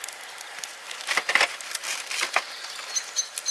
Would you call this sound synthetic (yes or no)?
no